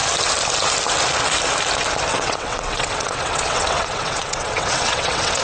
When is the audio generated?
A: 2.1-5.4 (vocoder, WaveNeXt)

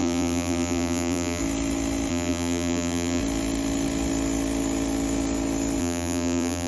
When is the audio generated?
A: 0.0-1.4 (vocoder, BigVGAN v2); 2.1-3.2; 5.8-6.7

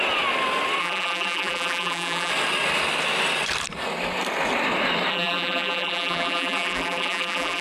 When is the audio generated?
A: 0.8-2.3 (vocoder, BigVGAN v2); 5.1-7.6

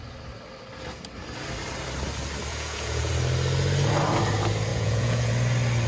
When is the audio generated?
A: 2.5-3.1 (vocoder, Vocos); 4.7-5.3